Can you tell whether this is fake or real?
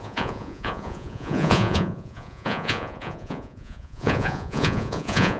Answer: fake